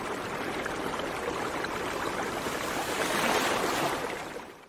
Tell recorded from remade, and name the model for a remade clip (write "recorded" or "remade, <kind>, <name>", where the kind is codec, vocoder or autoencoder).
remade, vocoder, BigVGAN v2